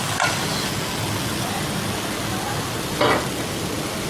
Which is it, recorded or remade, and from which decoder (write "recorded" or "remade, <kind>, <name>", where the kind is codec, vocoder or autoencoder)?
recorded